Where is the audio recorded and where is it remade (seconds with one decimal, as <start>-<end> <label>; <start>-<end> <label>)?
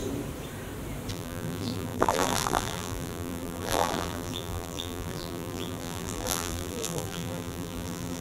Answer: 0.0-1.1 recorded; 1.1-8.2 remade